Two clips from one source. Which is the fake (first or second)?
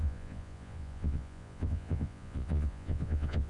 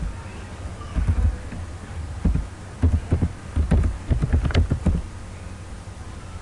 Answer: first